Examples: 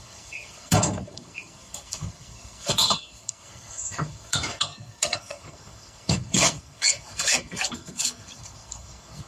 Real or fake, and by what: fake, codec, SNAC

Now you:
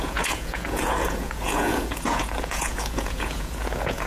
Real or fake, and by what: fake, vocoder, Vocos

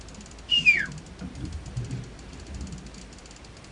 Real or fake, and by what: real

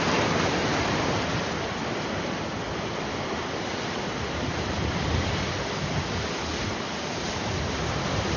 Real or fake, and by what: real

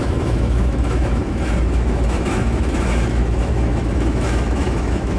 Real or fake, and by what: fake, autoencoder, DAC-VAE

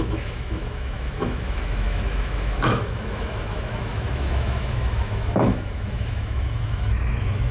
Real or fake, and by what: fake, autoencoder, DAC-VAE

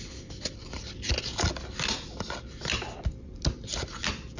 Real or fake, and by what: real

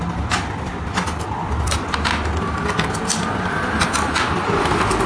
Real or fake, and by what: real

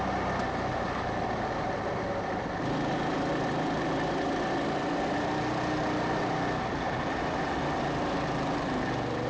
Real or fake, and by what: real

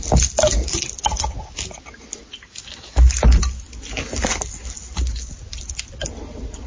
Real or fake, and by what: real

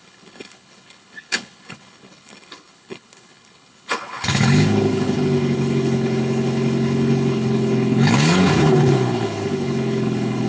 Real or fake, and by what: fake, codec, HILCodec